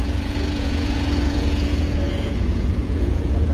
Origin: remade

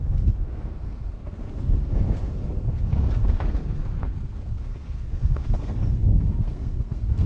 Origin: remade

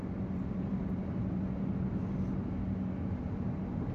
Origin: recorded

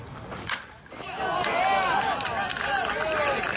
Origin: recorded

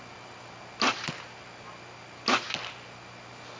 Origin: recorded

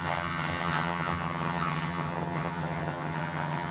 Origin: remade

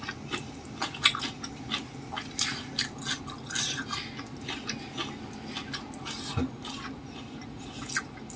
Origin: recorded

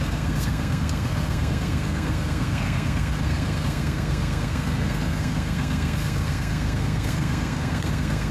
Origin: remade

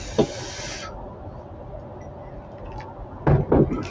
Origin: recorded